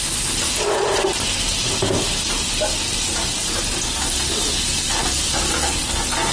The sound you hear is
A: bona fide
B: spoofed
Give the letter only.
A